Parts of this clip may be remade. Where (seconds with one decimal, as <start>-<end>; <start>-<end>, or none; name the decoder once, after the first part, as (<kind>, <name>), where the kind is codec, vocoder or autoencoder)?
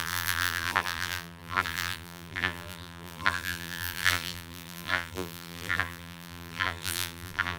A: 0.0-7.6 (vocoder, BigVGAN v2)